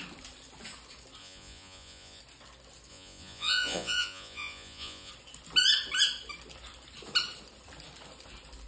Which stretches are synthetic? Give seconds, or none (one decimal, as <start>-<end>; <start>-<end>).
1.2-2.2; 2.9-5.1